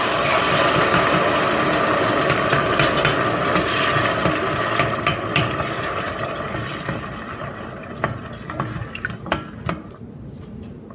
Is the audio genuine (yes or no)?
yes